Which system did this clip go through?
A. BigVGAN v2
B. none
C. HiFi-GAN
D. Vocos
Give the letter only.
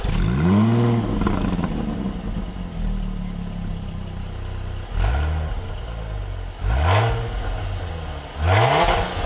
B